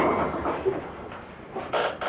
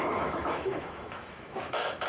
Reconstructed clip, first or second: second